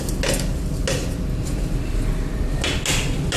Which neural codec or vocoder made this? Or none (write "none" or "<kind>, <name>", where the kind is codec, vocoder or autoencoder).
none